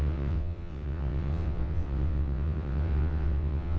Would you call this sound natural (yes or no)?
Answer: no